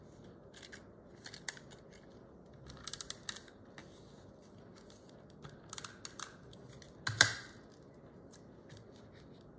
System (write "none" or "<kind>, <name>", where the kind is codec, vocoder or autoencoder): none